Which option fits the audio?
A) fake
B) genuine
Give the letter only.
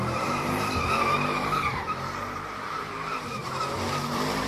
A